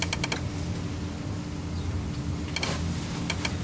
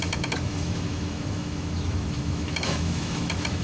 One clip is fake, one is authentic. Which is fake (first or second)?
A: second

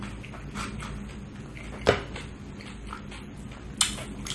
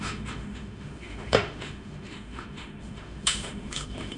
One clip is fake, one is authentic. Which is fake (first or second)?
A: second